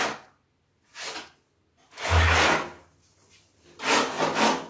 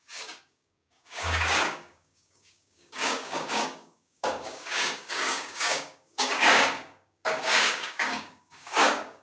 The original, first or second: first